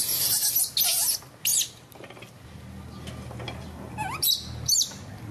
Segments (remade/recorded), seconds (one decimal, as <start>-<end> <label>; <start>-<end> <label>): 0.0-5.3 recorded